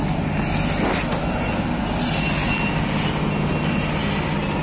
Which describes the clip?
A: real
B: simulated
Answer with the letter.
A